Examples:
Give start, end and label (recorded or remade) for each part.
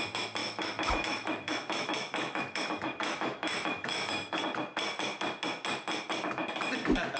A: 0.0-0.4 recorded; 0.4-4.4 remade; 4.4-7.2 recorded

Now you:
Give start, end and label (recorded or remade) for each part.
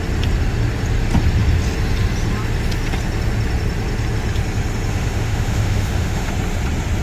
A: 0.0-4.9 recorded; 4.9-6.3 remade; 6.3-7.0 recorded